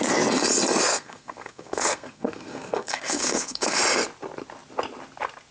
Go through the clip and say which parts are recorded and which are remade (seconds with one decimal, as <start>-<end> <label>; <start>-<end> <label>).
0.0-0.9 recorded; 0.9-3.8 remade; 3.8-5.5 recorded